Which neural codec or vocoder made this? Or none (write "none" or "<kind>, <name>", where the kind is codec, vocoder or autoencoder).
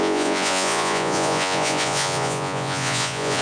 vocoder, Vocos